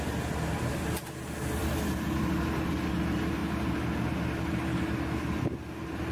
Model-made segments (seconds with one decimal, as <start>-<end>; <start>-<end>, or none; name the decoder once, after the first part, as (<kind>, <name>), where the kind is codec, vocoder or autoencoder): none